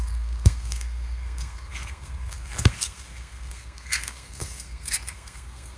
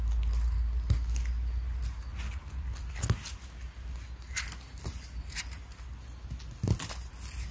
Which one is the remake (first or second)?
first